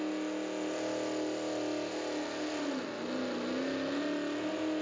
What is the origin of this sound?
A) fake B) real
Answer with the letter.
B